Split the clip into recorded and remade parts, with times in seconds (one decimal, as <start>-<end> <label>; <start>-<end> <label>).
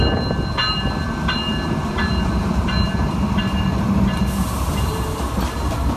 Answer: 0.0-6.0 recorded